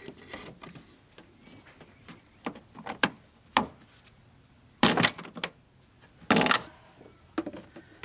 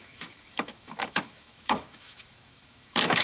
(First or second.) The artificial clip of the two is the second